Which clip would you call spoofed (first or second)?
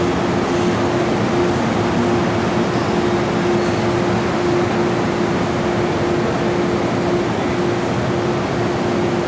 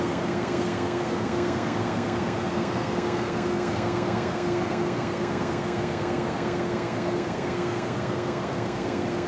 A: second